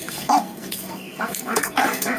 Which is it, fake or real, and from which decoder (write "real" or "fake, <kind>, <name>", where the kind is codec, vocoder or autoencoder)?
fake, codec, SNAC